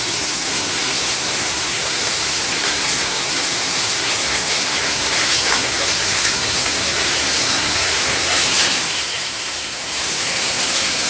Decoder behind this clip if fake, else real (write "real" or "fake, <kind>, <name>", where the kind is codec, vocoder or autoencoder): fake, codec, SNAC